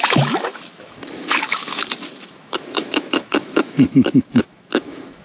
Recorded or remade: remade